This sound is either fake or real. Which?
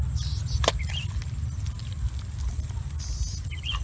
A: real